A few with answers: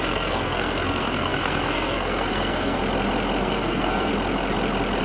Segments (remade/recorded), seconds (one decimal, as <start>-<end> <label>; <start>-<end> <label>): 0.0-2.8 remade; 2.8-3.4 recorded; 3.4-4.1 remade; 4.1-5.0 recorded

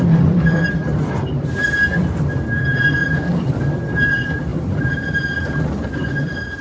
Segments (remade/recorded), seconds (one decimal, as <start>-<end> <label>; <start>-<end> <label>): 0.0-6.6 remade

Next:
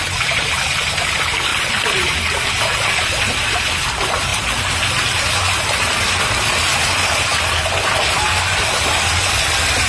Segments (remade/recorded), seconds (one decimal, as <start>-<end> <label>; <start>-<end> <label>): 0.0-9.9 recorded